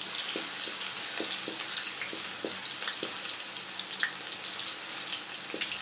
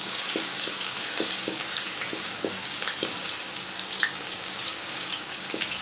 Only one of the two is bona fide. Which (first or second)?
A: first